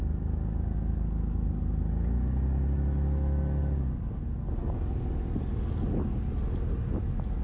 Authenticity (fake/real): real